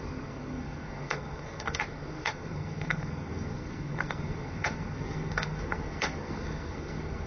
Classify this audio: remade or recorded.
remade